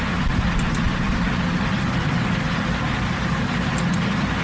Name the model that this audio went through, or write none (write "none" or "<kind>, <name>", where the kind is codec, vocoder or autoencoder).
none